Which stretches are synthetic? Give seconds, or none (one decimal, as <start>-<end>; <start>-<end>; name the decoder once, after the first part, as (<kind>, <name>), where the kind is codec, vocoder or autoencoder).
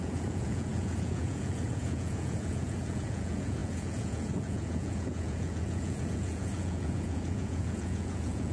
0.0-8.5 (vocoder, Vocos)